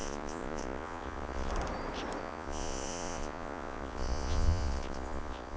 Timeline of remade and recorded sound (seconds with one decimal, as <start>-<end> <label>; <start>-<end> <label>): 0.0-1.5 remade; 1.5-2.2 recorded; 2.2-5.6 remade